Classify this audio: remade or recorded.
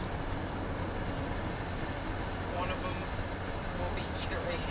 recorded